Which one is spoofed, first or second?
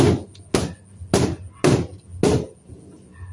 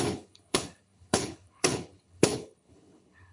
second